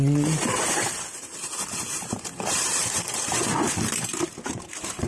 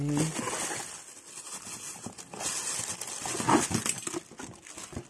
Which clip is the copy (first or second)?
first